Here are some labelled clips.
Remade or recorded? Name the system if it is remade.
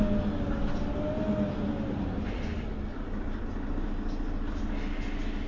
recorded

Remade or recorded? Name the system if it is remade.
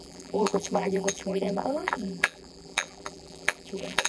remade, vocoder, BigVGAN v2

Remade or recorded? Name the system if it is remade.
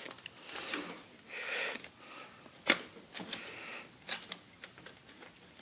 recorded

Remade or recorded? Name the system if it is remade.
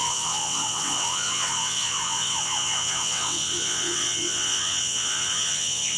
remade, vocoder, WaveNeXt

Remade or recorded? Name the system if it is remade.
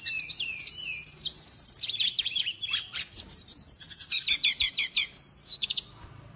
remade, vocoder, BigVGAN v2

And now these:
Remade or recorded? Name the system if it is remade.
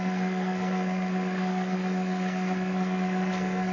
remade, codec, SNAC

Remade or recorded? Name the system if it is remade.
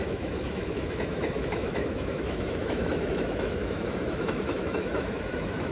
remade, autoencoder, DAC-VAE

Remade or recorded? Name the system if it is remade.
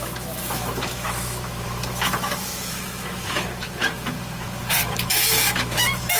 remade, autoencoder, DAC-VAE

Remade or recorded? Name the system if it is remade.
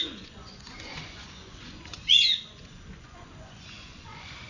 remade, vocoder, Vocos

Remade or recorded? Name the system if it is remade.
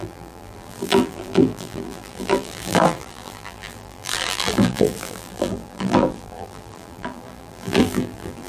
remade, vocoder, BigVGAN v2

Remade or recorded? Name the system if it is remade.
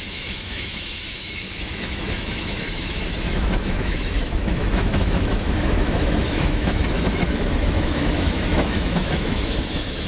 remade, autoencoder, DAC-VAE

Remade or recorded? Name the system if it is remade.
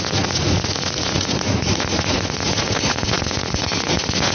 remade, vocoder, Vocos